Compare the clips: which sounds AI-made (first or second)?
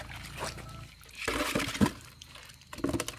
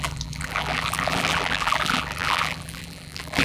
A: second